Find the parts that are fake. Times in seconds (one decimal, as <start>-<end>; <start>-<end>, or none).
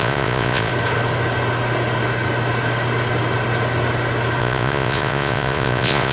0.0-0.7; 4.4-6.1